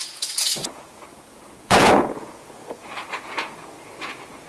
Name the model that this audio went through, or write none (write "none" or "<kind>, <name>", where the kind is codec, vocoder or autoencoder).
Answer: vocoder, Vocos